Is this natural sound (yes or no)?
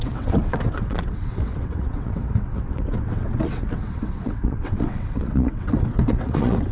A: no